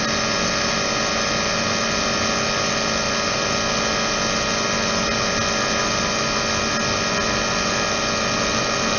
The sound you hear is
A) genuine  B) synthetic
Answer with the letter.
A